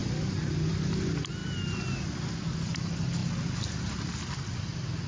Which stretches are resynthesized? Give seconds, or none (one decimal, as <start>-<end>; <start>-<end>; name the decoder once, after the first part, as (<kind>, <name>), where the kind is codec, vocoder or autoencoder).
none